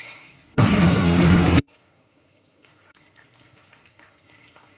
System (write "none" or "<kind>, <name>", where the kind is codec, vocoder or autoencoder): codec, SNAC